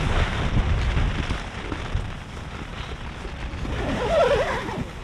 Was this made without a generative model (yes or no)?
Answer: yes